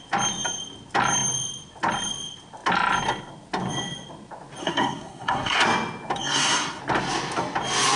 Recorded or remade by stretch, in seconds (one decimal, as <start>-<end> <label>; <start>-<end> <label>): 0.0-4.6 recorded; 4.6-5.6 remade; 5.6-6.2 recorded; 6.2-6.8 remade; 6.8-8.0 recorded